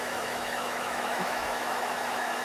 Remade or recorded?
remade